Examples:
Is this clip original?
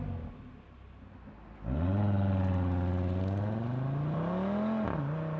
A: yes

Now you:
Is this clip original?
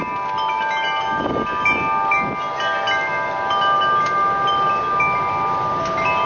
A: yes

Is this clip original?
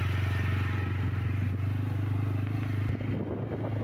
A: yes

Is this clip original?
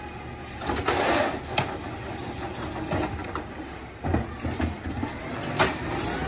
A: yes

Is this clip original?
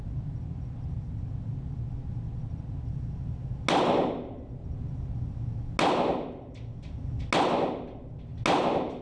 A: yes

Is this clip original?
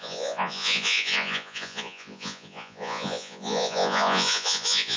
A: no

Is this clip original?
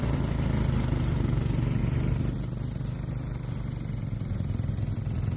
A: yes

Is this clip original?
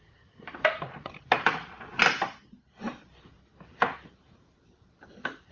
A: yes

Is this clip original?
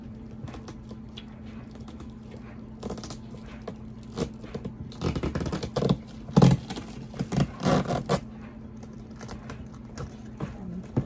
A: yes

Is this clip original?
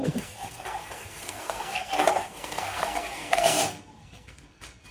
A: no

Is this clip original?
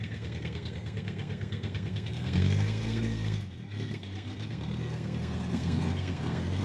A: no